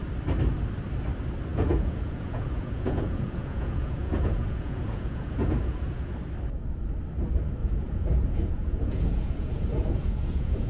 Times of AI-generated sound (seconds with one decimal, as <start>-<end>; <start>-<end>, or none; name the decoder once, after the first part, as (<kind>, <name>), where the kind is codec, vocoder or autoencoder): 1.5-6.1 (vocoder, Vocos); 7.6-10.7